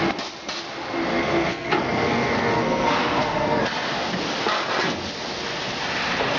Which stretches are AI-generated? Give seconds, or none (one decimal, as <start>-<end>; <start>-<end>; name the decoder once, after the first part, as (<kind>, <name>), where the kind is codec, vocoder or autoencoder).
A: 1.1-3.6 (codec, SNAC)